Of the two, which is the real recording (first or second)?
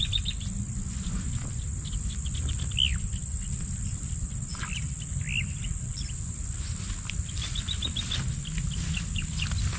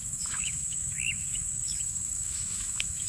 first